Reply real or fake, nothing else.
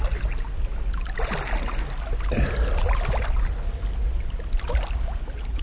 real